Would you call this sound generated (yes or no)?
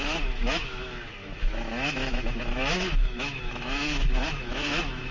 yes